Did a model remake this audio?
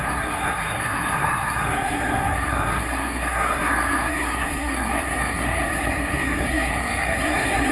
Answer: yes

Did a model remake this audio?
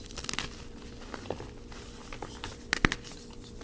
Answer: no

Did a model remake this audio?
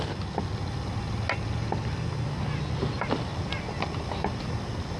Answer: no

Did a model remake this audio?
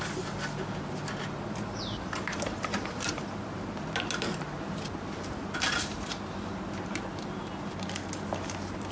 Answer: no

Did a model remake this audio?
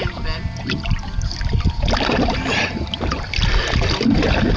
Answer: no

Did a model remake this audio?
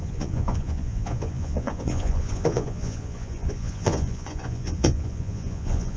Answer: yes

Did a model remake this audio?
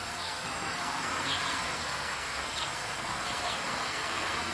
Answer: yes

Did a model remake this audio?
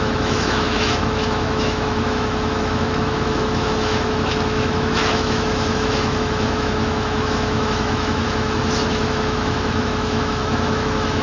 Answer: yes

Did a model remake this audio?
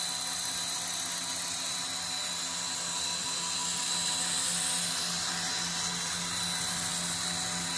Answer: no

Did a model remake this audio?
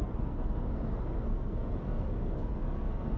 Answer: yes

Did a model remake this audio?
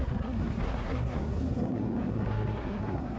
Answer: yes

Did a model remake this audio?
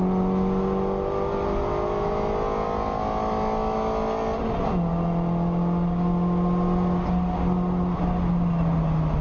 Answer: no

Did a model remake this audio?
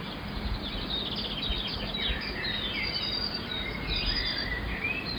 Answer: no